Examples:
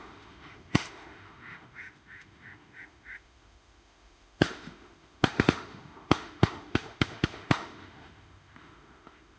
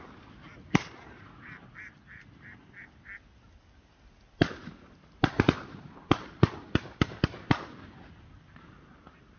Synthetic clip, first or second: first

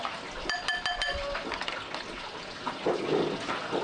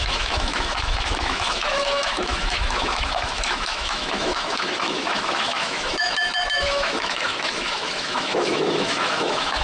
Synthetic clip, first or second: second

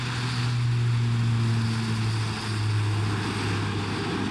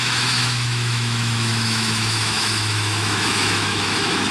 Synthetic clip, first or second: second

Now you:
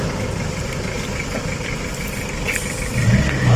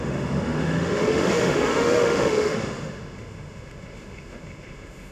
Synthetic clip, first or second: second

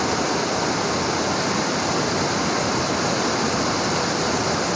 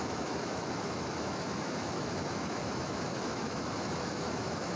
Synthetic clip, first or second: second